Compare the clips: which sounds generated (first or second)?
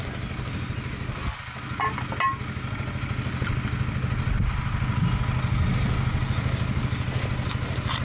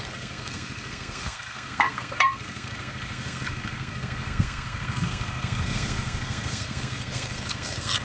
second